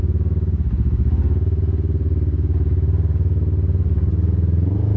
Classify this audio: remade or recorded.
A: recorded